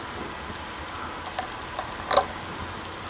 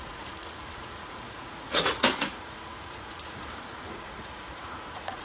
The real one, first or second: first